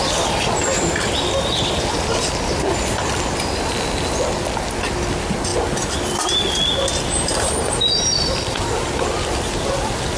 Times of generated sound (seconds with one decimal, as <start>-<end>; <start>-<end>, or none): none